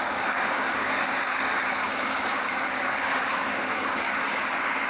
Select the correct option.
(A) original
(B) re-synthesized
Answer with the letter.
B